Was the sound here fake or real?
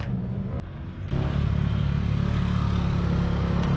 real